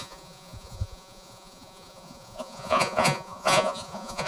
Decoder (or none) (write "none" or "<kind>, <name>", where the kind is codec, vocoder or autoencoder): vocoder, Vocos